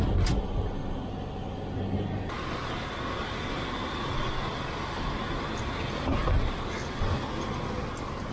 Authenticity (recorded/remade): recorded